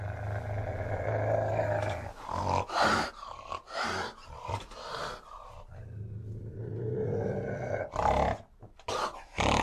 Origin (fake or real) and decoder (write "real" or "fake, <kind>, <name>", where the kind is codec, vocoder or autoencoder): real